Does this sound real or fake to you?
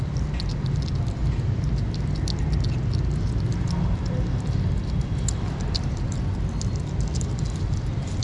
real